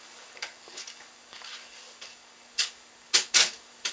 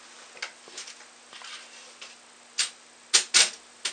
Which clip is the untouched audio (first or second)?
second